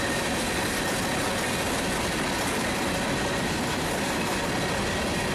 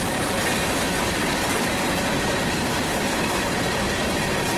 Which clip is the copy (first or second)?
second